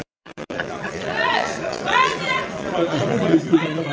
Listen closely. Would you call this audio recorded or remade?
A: remade